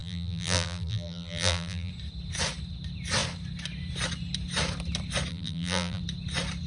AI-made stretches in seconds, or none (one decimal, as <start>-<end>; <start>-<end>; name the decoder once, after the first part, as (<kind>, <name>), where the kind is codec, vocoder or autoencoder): 0.0-1.9 (vocoder, BigVGAN v2); 5.3-6.0

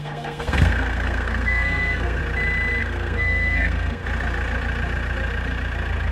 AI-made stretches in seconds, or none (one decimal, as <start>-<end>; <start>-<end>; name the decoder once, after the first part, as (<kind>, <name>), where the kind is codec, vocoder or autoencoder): 0.0-2.2 (codec, SNAC); 2.8-4.0

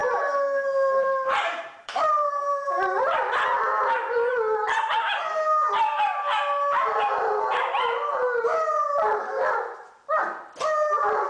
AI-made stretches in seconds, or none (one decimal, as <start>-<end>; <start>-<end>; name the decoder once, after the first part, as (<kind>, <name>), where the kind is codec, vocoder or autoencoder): 0.0-3.2 (vocoder, BigVGAN v2)

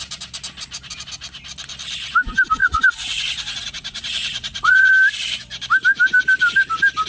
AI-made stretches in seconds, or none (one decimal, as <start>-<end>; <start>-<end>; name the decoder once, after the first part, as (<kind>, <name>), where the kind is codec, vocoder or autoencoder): 2.6-4.9 (vocoder, Vocos)